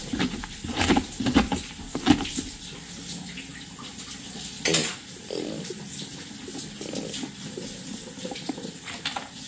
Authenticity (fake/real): real